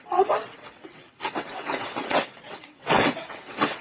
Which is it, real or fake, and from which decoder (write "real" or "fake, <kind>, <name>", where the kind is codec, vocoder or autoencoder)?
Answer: fake, vocoder, WaveNeXt